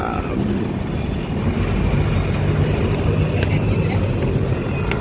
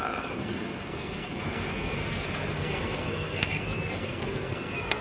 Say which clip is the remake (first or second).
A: second